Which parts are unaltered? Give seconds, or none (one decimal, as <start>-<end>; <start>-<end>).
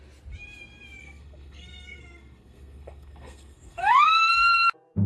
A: 0.0-1.0; 4.1-5.1